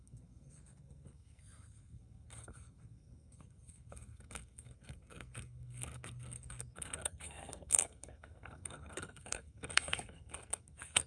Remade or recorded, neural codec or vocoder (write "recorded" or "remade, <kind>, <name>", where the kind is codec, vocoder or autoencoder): remade, codec, SNAC